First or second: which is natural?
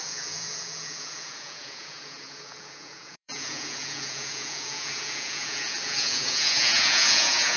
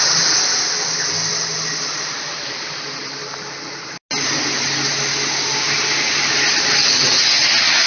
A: second